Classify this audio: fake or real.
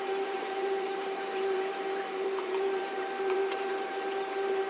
fake